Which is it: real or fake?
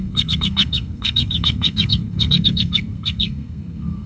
fake